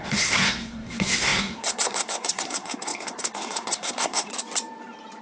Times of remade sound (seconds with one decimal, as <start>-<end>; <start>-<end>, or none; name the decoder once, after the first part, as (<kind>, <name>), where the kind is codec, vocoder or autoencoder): 0.0-4.3 (codec, SNAC)